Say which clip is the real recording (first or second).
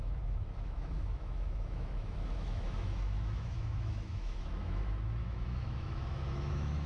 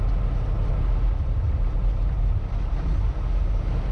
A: second